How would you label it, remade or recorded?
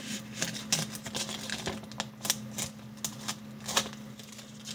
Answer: recorded